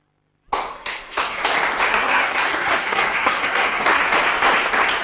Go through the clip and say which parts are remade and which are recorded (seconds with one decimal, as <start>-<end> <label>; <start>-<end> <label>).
0.0-0.7 recorded; 0.7-1.4 remade; 1.4-1.9 recorded; 1.9-4.0 remade; 4.0-5.0 recorded